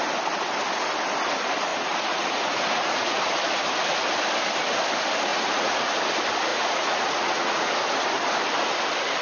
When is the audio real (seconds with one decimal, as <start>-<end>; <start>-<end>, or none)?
0.0-1.7; 3.2-5.3; 5.9-6.5; 7.7-9.2